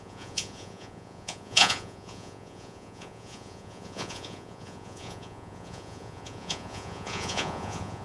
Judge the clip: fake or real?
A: fake